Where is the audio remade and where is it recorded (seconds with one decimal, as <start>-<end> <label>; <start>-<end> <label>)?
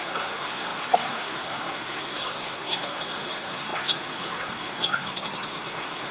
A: 0.0-6.1 remade